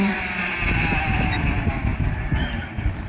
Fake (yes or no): yes